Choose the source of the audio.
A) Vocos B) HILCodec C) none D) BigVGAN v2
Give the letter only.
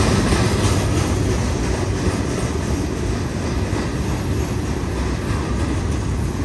C